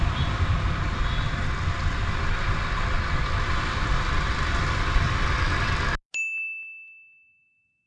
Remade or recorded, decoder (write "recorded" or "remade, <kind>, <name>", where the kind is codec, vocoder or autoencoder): recorded